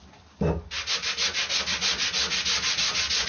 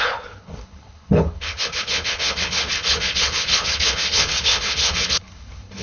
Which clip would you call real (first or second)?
first